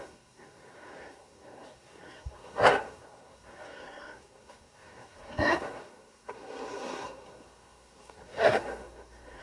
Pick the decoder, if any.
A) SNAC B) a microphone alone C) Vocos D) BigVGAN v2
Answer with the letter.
A